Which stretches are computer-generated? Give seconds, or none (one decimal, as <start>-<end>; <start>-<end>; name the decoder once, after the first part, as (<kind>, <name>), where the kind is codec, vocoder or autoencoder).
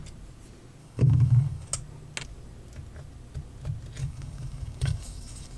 0.8-1.7 (codec, DAC); 4.0-5.6